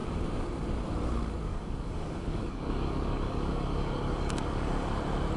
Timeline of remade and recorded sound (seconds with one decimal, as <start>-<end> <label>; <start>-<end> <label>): 0.0-1.5 recorded; 1.5-4.7 remade; 4.7-5.4 recorded